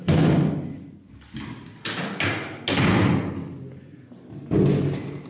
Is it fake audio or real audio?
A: real